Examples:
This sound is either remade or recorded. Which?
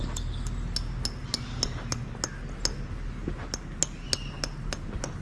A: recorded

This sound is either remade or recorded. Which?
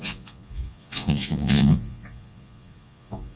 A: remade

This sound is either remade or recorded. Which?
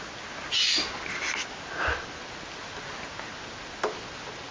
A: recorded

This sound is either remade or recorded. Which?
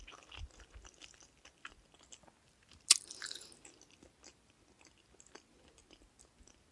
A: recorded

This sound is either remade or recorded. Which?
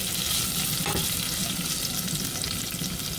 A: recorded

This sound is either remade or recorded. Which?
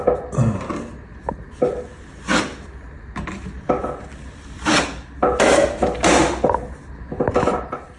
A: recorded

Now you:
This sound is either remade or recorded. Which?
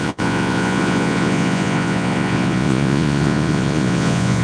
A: remade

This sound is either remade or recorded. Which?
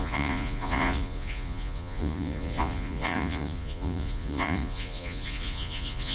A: remade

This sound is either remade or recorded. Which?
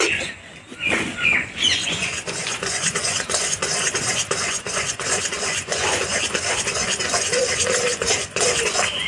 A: remade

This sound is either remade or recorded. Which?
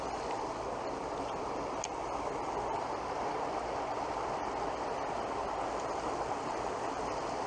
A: recorded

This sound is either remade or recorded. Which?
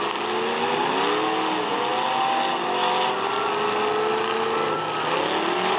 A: recorded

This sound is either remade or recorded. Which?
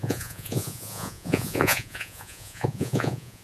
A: remade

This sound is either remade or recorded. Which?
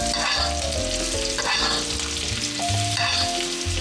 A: recorded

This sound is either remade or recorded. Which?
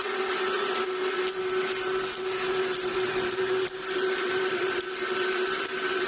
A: recorded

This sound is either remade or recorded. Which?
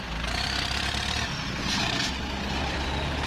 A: recorded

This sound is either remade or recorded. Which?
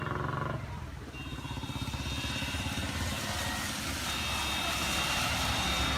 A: recorded